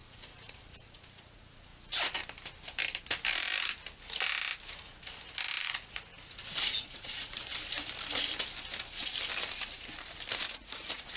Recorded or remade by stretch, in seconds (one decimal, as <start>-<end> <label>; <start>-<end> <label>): 0.0-1.7 remade; 1.7-5.6 recorded; 5.6-7.4 remade; 7.4-10.5 recorded; 10.5-11.2 remade